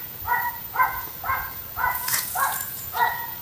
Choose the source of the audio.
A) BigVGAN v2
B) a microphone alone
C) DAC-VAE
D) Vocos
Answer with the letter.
D